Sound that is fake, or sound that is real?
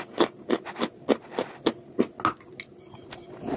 real